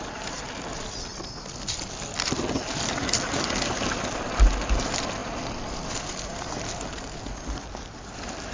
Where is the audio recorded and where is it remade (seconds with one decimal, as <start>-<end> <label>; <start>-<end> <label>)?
0.0-8.5 recorded